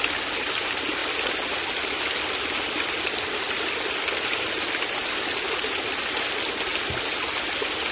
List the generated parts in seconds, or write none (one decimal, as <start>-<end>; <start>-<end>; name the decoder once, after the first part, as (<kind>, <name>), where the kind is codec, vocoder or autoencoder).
1.0-4.9 (vocoder, BigVGAN v2); 6.7-7.9